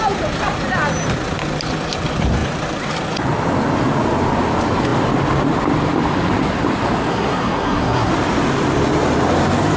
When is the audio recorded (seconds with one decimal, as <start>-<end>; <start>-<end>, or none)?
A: 0.0-7.1; 8.1-9.8